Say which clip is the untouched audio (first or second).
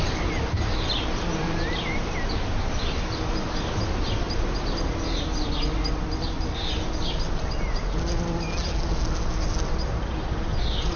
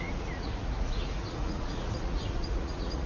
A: first